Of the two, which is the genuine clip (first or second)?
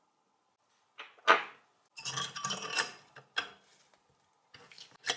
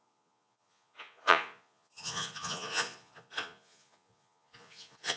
first